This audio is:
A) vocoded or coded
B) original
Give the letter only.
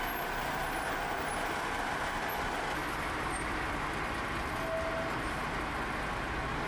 B